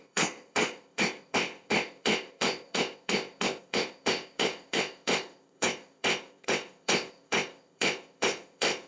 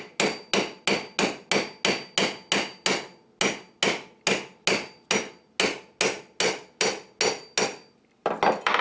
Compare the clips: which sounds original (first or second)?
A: second